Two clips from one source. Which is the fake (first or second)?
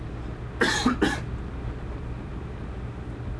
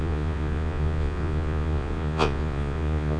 second